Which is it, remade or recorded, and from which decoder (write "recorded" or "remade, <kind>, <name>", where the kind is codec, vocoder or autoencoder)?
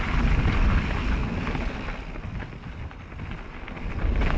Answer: recorded